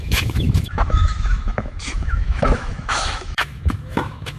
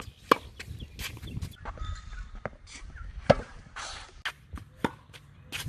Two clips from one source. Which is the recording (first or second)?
second